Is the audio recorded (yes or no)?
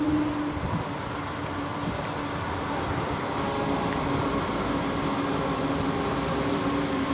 yes